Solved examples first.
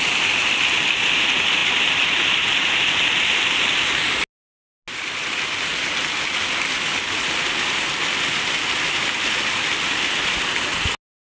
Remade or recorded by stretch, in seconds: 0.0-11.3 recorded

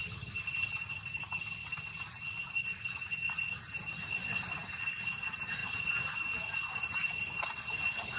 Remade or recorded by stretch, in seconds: 0.0-8.2 recorded